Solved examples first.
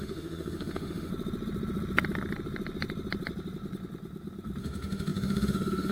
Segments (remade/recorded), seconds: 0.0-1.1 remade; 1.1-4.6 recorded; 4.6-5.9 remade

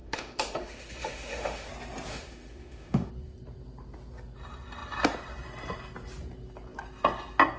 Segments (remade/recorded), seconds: 0.0-1.7 remade; 1.7-2.1 recorded; 2.1-3.1 remade; 3.1-7.6 recorded

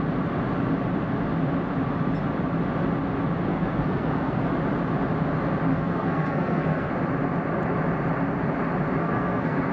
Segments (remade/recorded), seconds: 0.0-3.5 recorded; 3.5-4.5 remade; 4.5-5.7 recorded; 5.7-6.9 remade; 6.9-9.0 recorded; 9.0-9.7 remade

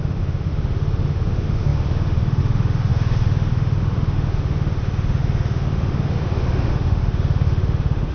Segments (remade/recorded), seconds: 0.0-8.1 remade